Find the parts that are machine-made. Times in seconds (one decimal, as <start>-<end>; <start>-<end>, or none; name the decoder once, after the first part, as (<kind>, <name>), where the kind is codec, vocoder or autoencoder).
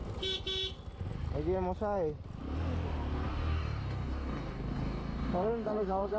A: 3.3-6.2 (codec, DAC)